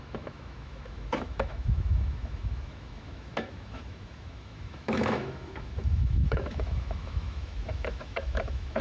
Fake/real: fake